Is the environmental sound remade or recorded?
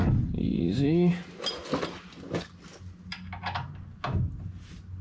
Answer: recorded